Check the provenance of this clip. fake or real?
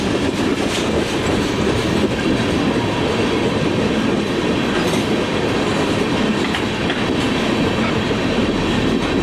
real